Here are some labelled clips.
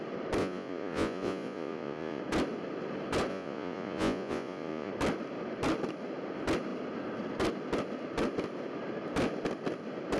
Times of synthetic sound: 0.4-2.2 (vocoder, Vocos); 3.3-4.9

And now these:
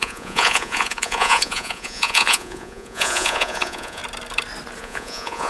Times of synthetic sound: 0.0-4.0 (vocoder, Vocos); 4.8-5.5

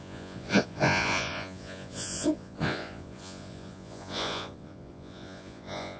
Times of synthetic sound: 0.0-6.0 (vocoder, Vocos)

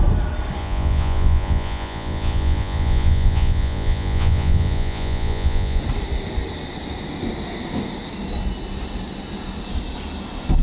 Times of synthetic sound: 0.6-5.8 (vocoder, Vocos)